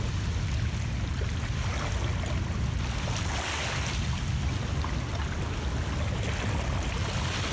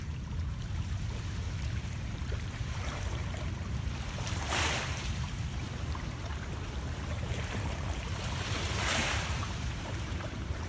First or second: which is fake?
second